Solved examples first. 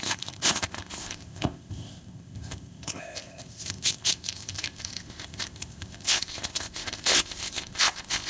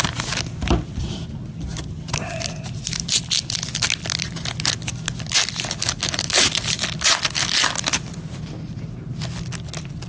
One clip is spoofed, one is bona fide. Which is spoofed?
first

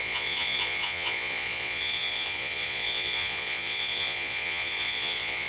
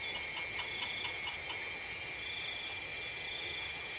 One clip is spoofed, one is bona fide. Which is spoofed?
first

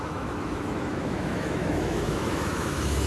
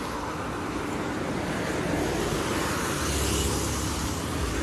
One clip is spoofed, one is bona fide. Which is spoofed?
first